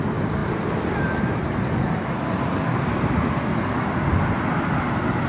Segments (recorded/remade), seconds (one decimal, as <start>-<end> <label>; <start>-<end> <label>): 0.0-0.4 recorded; 0.4-2.6 remade; 2.6-5.3 recorded